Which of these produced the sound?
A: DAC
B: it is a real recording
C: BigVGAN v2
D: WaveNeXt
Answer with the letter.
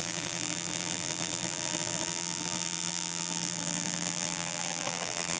C